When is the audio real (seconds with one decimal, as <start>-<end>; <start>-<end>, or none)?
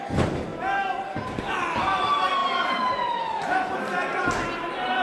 0.0-5.0